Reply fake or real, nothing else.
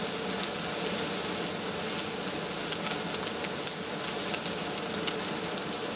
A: real